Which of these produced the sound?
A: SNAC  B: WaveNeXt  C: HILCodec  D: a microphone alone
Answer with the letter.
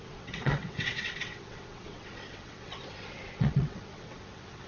B